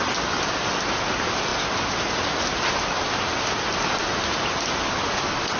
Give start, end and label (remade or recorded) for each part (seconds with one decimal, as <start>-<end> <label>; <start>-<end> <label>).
0.0-5.6 recorded